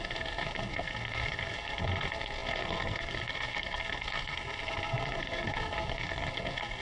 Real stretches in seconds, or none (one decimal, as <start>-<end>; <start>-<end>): none